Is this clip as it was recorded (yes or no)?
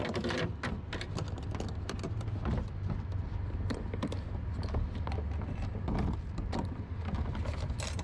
yes